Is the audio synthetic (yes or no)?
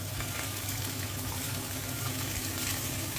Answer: yes